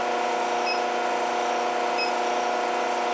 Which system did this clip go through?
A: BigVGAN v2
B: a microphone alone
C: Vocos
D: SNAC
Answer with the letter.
B